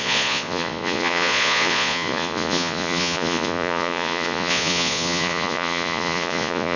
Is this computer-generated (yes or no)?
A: yes